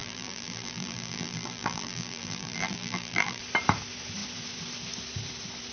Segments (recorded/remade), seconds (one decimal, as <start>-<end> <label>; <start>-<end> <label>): 0.0-3.4 remade; 3.4-5.7 recorded